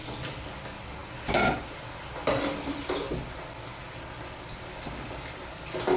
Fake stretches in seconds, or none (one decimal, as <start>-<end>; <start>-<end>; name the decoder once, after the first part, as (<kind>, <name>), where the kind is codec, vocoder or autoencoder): none